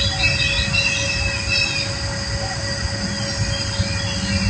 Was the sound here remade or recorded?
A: recorded